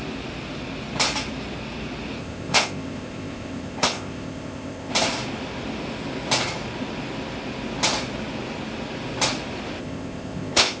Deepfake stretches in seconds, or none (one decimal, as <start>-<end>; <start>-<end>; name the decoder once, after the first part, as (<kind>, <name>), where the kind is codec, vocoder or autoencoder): 2.2-4.9 (codec, ZipCodec); 9.8-10.8